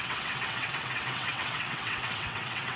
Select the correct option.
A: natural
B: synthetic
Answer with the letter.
B